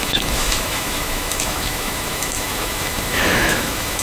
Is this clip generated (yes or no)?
yes